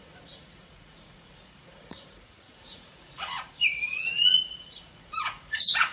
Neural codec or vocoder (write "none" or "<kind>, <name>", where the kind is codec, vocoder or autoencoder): vocoder, Vocos